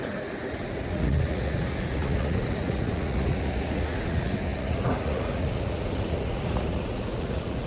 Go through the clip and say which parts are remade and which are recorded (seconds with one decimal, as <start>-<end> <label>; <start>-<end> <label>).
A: 0.0-7.7 remade